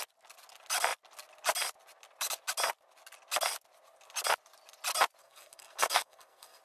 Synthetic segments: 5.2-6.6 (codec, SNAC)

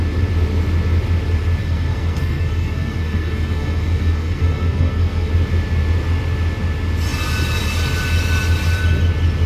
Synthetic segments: 1.6-5.3 (codec, SNAC)

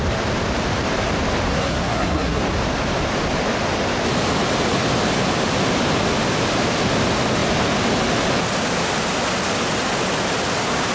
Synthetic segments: 1.5-2.4 (codec, SNAC)